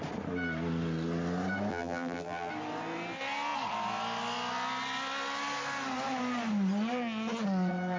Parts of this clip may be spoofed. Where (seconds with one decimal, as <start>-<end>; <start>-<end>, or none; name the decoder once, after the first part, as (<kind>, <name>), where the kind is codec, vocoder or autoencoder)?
1.7-2.5 (vocoder, BigVGAN v2)

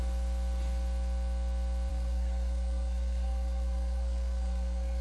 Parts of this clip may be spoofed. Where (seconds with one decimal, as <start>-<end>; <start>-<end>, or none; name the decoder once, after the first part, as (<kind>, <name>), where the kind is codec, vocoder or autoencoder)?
1.9-5.0 (codec, SNAC)

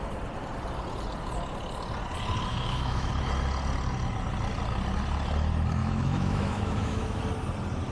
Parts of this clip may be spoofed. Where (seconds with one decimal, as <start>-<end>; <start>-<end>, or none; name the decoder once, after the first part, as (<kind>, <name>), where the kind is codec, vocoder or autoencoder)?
2.5-3.1 (autoencoder, DAC-VAE); 5.8-7.2

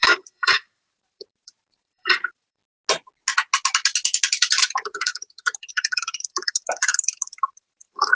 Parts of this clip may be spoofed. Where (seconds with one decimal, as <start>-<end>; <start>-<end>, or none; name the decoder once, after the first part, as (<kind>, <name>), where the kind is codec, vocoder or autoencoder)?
0.0-2.6 (vocoder, BigVGAN v2); 4.5-8.1

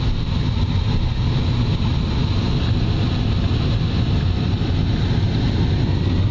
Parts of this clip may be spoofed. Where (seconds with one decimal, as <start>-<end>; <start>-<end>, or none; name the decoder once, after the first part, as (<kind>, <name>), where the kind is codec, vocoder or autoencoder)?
none